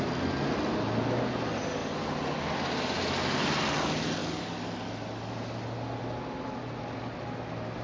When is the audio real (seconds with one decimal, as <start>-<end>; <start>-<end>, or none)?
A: 0.0-7.8